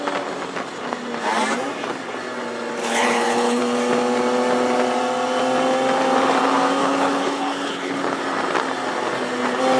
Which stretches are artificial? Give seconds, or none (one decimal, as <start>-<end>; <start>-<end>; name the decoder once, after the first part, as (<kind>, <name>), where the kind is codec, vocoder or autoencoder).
2.8-3.6 (codec, HILCodec); 6.8-8.2